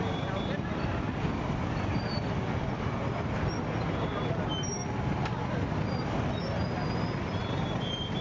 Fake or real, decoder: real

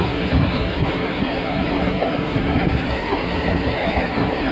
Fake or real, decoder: fake, codec, SNAC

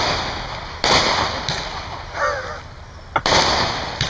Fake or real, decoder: real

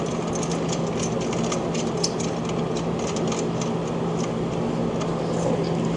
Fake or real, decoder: real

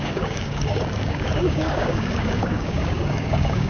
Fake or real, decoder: fake, codec, DAC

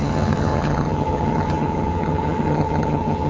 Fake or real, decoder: fake, vocoder, HiFi-GAN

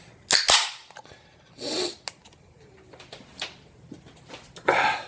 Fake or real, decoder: real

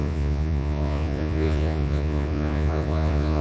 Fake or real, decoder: fake, vocoder, Vocos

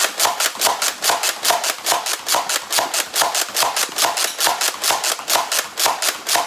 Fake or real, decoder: real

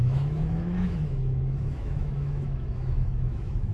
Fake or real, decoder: fake, autoencoder, DAC-VAE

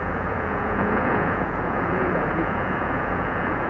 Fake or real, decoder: fake, vocoder, Vocos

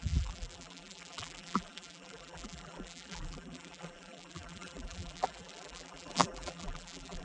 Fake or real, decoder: fake, vocoder, BigVGAN v2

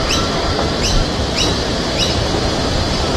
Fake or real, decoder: fake, vocoder, BigVGAN v2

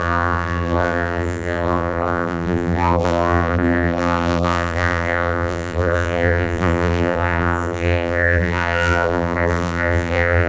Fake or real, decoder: fake, vocoder, BigVGAN v2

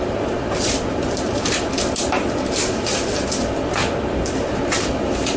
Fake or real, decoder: fake, vocoder, BigVGAN v2